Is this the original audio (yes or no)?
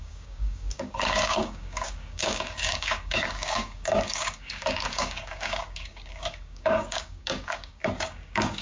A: no